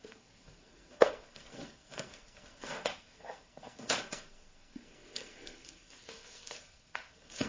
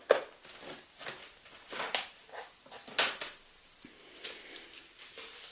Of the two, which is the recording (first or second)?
second